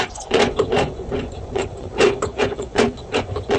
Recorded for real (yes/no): no